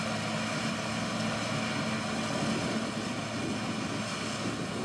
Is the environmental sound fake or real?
real